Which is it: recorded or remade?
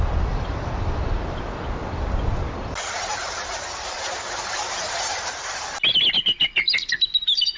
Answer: recorded